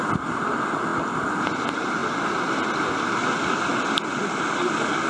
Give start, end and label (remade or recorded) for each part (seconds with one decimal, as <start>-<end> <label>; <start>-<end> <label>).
0.0-5.1 recorded